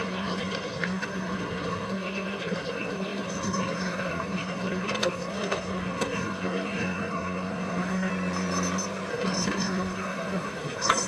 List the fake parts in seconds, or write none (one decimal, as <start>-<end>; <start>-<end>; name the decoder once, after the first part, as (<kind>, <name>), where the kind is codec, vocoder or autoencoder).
0.0-8.1 (codec, SNAC); 9.1-11.1

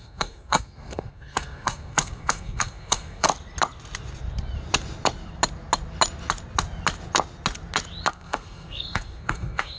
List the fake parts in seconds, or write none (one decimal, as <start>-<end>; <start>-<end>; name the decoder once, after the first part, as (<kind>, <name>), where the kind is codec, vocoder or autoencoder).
0.0-3.3 (codec, SNAC); 8.1-9.8

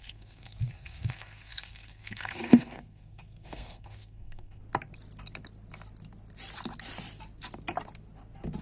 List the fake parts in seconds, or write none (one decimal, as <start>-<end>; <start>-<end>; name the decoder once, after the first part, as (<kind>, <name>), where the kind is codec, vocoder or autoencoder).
0.0-4.6 (codec, SNAC)

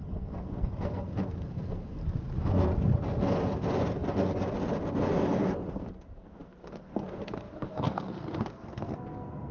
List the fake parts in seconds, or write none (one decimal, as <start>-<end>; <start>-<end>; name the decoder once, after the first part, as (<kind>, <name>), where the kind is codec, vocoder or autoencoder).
0.0-2.0 (codec, SNAC); 5.7-9.5